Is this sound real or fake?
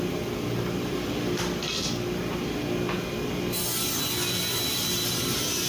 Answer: real